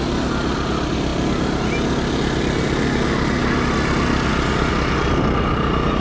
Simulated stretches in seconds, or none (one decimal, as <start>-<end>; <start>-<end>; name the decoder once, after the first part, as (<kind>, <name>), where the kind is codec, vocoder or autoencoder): none

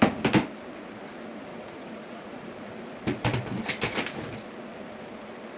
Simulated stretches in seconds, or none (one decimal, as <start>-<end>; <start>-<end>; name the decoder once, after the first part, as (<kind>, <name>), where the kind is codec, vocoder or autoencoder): 1.5-2.5 (vocoder, Vocos)

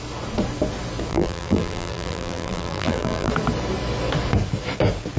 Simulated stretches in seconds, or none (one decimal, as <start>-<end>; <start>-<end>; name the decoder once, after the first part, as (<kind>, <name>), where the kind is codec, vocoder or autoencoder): 1.1-3.3 (vocoder, BigVGAN v2)

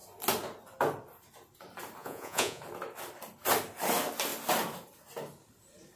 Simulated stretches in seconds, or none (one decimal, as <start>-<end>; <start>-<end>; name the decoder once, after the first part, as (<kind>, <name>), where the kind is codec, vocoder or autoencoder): 2.0-2.6 (vocoder, Vocos)

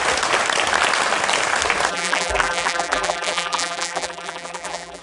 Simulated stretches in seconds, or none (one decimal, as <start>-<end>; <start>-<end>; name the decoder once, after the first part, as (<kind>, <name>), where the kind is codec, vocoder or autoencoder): 1.9-5.0 (vocoder, BigVGAN v2)